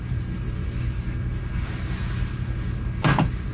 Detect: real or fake real